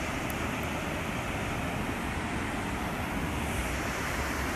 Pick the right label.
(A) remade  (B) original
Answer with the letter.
B